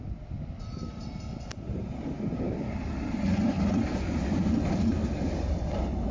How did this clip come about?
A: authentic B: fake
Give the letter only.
A